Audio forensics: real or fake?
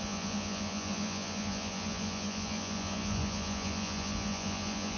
fake